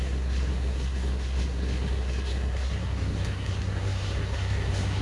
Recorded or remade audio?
remade